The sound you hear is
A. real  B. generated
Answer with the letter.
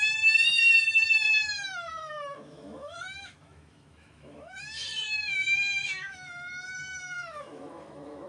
B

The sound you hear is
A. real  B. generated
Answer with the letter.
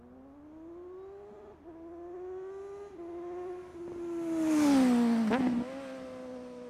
A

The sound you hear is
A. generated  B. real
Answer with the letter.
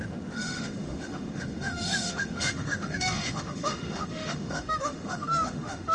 A